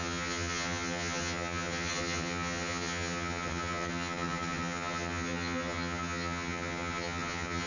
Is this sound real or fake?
fake